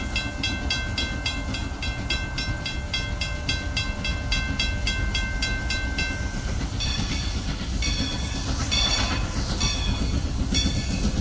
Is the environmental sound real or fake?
real